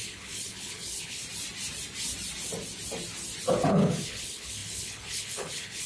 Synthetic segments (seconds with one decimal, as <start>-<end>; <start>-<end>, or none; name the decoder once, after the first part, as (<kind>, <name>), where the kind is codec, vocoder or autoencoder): 0.0-1.2 (codec, HILCodec); 3.7-5.9